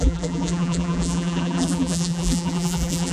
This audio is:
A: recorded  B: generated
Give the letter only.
B